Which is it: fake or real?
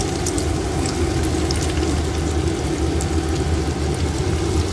real